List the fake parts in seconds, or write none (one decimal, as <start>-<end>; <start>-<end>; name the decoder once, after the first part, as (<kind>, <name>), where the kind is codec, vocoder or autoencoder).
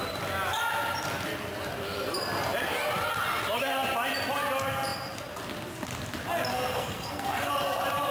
6.5-7.5 (codec, SNAC)